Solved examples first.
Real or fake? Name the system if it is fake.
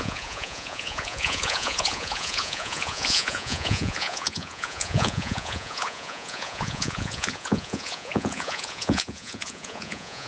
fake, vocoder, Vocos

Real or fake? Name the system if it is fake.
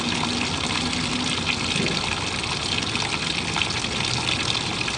real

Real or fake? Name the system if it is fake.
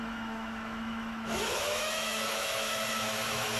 fake, autoencoder, DAC-VAE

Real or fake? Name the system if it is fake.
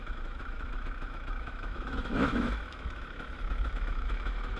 fake, autoencoder, DAC-VAE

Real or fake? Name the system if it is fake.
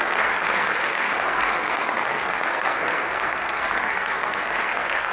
fake, codec, SNAC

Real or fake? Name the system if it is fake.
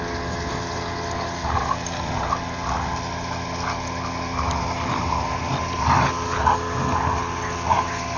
real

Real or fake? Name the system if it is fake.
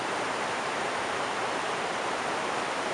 fake, vocoder, BigVGAN v2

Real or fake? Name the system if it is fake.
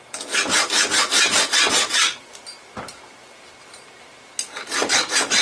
real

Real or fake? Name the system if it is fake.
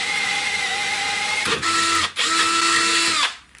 real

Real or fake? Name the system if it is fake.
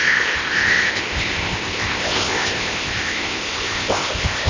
fake, codec, ZipCodec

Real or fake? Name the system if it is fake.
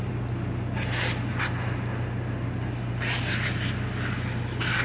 real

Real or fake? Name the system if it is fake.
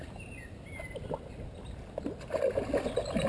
real